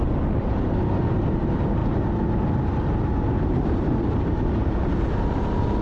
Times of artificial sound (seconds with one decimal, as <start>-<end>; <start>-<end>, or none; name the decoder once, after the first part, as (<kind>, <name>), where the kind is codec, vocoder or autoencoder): none